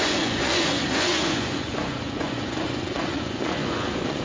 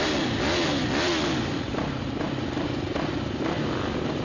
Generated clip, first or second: first